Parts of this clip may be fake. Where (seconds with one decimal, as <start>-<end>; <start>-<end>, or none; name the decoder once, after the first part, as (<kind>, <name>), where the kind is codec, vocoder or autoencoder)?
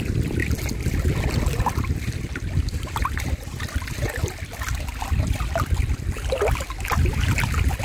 none